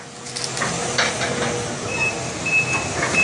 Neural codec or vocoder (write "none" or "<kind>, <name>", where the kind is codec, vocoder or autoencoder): none